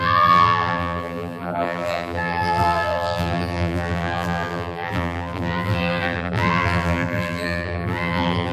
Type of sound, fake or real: fake